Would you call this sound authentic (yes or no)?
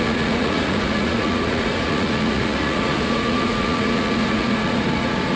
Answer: no